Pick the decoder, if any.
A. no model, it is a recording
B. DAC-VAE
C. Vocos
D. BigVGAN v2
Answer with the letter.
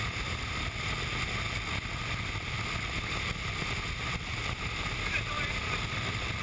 A